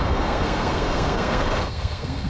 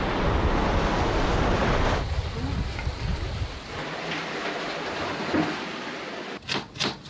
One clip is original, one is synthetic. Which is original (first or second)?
second